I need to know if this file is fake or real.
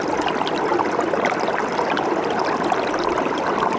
real